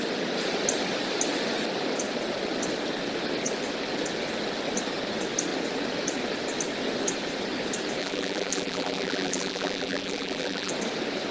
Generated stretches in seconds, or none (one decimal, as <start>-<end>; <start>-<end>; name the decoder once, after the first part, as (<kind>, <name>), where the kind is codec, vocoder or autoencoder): 8.0-10.7 (vocoder, BigVGAN v2)